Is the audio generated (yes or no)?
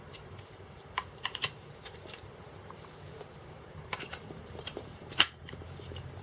yes